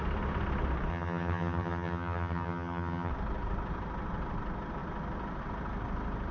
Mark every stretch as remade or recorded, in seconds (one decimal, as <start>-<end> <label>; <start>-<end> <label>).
0.0-0.9 recorded; 0.9-3.1 remade; 3.1-6.3 recorded